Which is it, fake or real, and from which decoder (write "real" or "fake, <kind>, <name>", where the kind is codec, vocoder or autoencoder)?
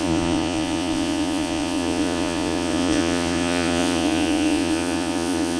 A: fake, vocoder, Vocos